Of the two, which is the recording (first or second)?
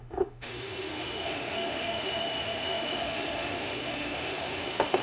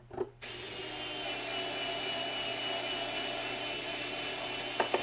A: second